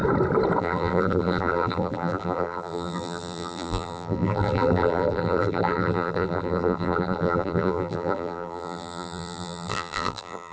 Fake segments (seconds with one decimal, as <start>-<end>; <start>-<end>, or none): 0.6-10.5